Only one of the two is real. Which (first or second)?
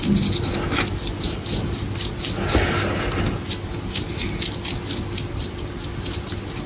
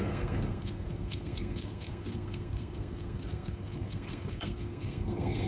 first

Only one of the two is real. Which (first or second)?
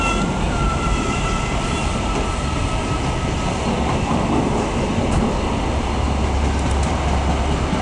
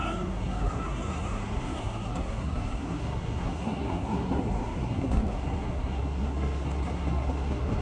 first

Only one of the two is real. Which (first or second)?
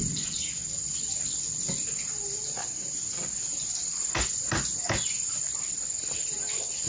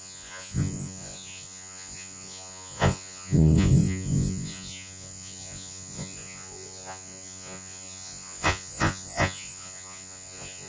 first